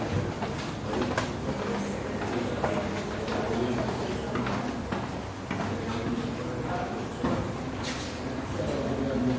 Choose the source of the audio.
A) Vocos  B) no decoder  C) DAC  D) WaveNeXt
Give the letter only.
B